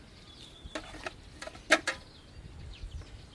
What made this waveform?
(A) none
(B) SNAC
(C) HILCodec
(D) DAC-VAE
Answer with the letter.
A